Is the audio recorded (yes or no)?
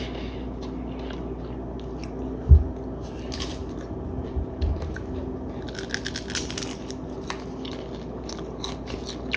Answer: yes